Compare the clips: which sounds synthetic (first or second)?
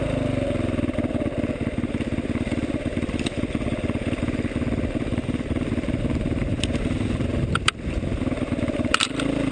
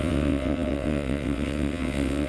second